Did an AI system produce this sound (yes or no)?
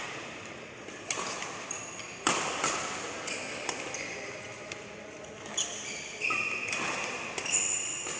no